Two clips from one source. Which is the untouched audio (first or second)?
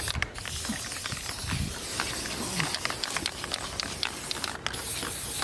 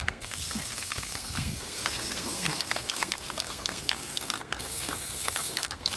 first